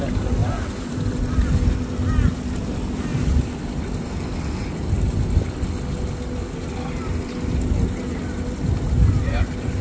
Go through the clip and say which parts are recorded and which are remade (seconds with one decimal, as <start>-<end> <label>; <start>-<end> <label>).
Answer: 0.0-9.8 recorded